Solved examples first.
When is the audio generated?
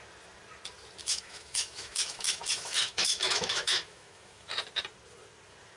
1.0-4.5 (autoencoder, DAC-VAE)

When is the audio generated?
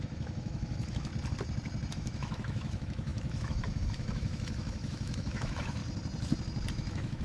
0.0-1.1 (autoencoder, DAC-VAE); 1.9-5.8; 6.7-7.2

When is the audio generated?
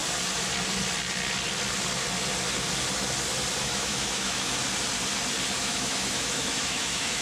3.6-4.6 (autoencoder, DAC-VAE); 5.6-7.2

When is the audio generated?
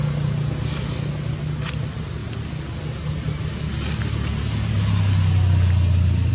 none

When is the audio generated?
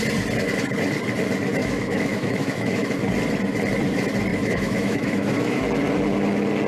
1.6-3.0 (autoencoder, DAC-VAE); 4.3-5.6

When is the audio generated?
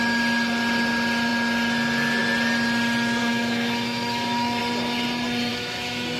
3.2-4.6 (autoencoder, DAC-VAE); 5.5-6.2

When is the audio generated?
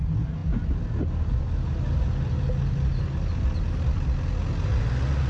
none